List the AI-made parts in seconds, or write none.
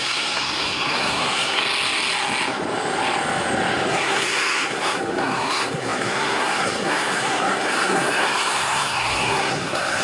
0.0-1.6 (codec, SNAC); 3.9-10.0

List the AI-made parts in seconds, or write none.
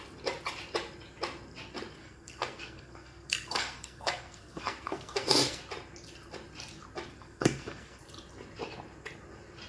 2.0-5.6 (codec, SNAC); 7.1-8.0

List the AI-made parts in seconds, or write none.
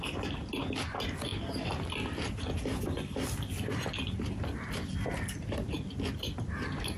none